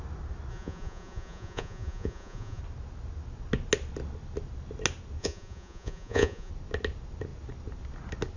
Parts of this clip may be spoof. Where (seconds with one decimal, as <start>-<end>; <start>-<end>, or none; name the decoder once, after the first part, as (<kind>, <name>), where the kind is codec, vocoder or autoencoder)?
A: 0.5-2.6 (vocoder, Vocos); 5.2-6.5